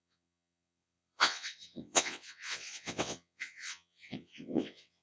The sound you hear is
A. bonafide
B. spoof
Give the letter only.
B